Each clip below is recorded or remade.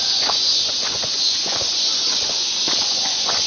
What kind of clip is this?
remade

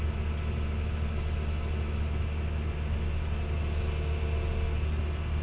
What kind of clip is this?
recorded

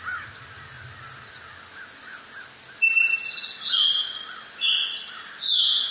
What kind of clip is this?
recorded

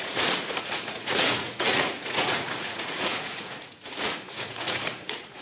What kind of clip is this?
remade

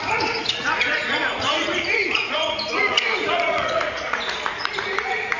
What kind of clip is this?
remade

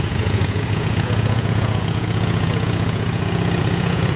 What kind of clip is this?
remade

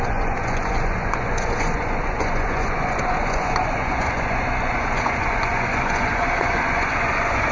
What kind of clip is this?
remade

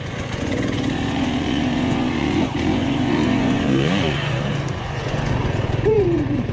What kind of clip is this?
remade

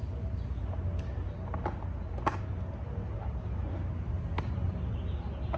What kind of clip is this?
recorded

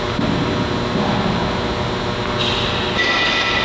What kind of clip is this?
recorded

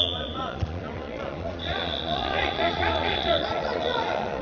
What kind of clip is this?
remade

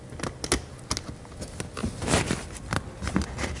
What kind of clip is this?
recorded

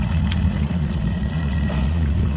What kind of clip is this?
remade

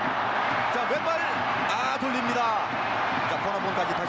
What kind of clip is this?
recorded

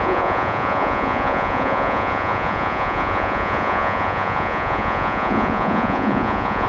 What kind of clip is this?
remade